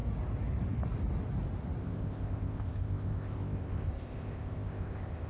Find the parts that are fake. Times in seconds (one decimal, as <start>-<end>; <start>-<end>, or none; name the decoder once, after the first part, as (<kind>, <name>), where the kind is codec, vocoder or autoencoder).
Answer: 1.8-5.3 (codec, ZipCodec)